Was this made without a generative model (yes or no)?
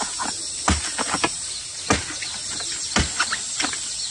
yes